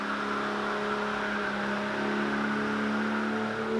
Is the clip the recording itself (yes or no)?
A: yes